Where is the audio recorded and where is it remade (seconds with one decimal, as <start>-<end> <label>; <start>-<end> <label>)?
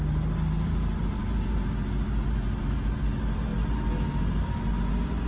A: 0.0-5.3 recorded